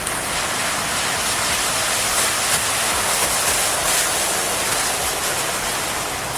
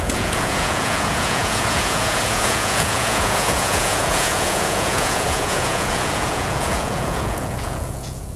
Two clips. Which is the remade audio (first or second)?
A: second